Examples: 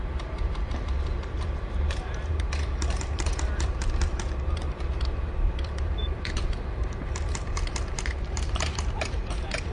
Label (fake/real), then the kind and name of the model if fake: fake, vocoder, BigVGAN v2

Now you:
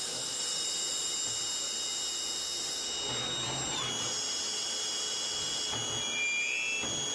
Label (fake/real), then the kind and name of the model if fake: real